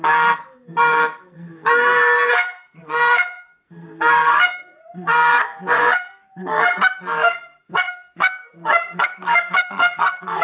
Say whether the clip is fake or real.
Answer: fake